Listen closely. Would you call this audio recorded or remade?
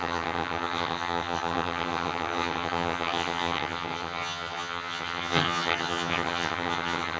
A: remade